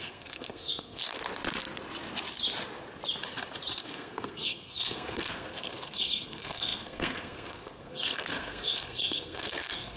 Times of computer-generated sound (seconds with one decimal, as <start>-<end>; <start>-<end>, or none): 0.0-1.0; 3.8-10.0